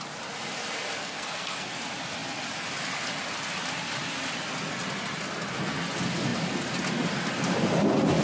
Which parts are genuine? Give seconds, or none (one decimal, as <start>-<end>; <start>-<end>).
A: 0.0-1.0; 1.8-8.2